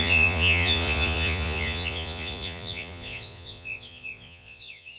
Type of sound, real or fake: fake